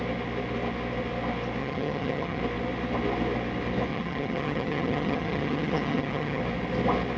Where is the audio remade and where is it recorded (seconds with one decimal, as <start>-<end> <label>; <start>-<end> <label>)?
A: 0.0-1.6 recorded; 1.6-2.4 remade; 2.4-3.9 recorded; 3.9-6.4 remade; 6.4-7.2 recorded